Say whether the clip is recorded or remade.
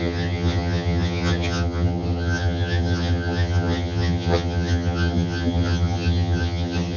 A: remade